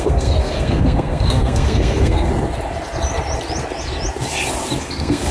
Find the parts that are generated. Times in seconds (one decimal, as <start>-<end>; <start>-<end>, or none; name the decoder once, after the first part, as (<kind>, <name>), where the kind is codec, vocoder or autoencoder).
0.0-2.3 (codec, SNAC); 4.8-5.3